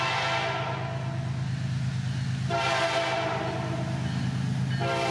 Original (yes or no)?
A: yes